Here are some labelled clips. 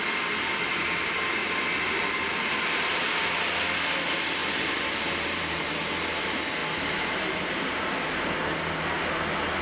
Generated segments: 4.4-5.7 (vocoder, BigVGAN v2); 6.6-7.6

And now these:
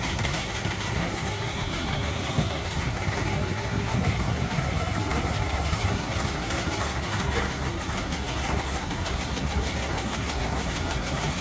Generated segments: 0.0-11.4 (codec, SNAC)

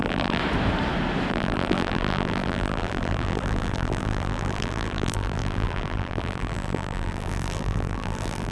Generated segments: 0.0-0.4 (vocoder, BigVGAN v2); 1.3-8.5

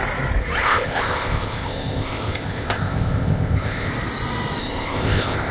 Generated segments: 0.6-3.9 (codec, ZipCodec); 4.6-5.5

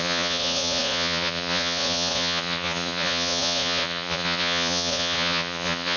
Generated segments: 0.0-6.0 (vocoder, Vocos)

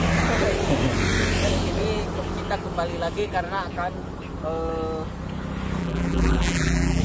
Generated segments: 5.8-7.0 (vocoder, BigVGAN v2)

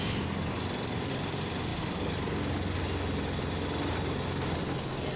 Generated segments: none